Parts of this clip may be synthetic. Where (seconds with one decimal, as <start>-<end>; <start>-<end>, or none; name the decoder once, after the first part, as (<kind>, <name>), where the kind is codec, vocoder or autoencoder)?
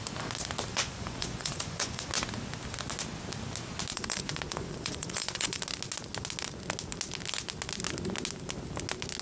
0.7-2.1 (vocoder, Vocos); 3.9-5.6